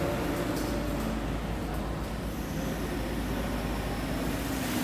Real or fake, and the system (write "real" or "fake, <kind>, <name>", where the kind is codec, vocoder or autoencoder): real